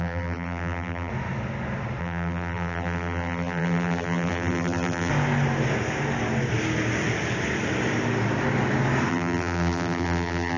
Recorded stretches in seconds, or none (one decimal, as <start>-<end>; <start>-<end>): 1.1-2.0; 5.1-9.1